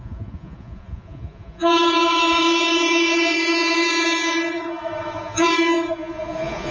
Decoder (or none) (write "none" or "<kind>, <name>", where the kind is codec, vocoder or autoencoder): vocoder, Vocos